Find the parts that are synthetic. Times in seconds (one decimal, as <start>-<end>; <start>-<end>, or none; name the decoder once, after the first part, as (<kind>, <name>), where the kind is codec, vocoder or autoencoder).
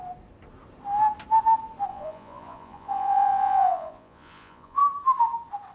1.9-4.8 (vocoder, Vocos)